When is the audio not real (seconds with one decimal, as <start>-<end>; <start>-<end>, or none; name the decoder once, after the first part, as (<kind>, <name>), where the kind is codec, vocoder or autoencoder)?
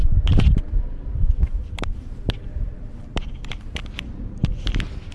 1.4-4.5 (vocoder, BigVGAN v2)